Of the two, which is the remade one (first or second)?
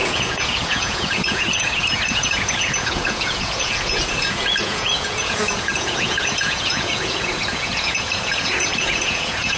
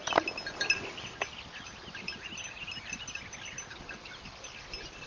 first